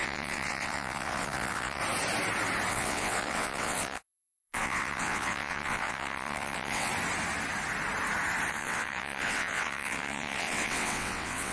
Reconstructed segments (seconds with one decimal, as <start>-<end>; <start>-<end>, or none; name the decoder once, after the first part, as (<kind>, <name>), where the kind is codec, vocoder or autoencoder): 0.0-1.8 (vocoder, WaveNeXt); 2.7-6.9; 8.5-11.5